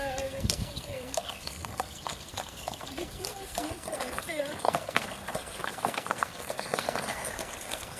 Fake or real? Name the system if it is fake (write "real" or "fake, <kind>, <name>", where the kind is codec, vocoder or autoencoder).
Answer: fake, codec, SNAC